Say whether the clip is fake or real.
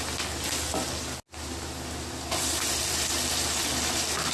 real